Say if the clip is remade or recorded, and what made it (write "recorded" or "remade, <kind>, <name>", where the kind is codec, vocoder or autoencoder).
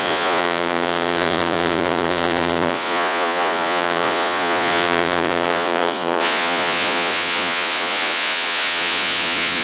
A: remade, vocoder, Vocos